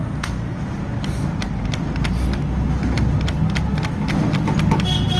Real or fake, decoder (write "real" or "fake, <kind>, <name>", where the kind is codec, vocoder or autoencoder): real